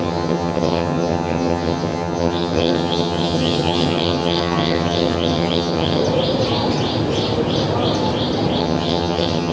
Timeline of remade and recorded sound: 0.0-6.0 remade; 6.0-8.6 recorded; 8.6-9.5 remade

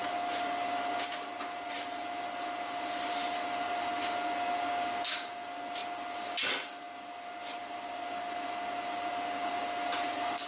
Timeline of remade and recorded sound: 0.0-10.5 recorded

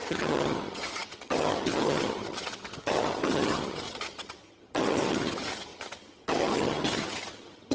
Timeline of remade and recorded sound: 0.0-7.7 remade

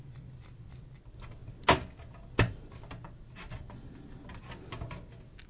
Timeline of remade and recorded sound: 0.0-5.5 recorded

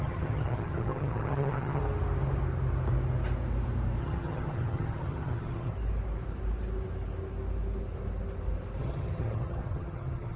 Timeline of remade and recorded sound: 0.0-1.8 remade; 1.8-4.0 recorded; 4.0-5.7 remade; 5.7-8.8 recorded; 8.8-10.4 remade